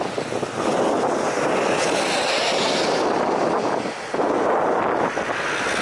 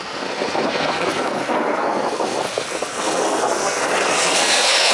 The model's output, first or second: second